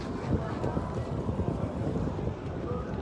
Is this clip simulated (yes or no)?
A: no